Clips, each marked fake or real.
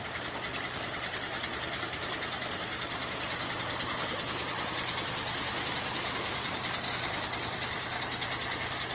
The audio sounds real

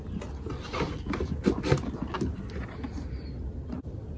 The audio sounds real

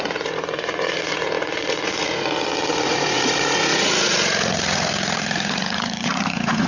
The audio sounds fake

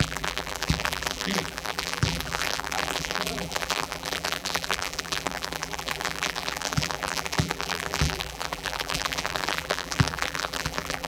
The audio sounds fake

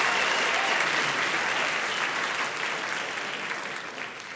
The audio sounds real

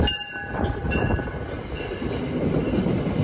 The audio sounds real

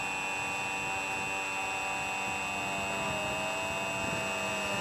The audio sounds real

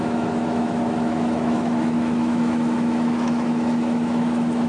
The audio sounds fake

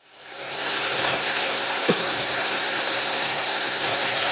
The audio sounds fake